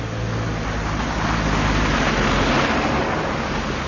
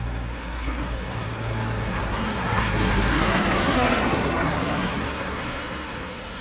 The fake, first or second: second